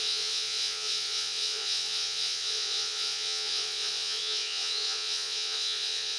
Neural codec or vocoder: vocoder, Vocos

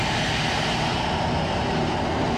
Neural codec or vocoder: none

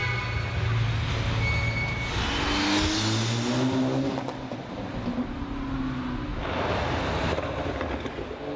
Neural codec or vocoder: none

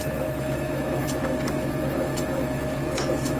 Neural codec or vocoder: autoencoder, DAC-VAE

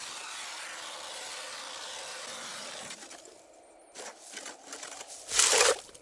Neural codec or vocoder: none